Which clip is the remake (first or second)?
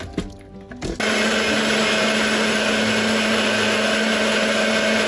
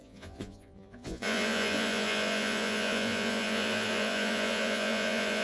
second